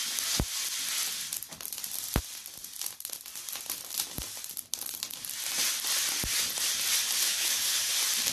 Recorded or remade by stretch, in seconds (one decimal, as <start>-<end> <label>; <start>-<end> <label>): 0.0-7.2 recorded; 7.2-7.9 remade; 7.9-8.3 recorded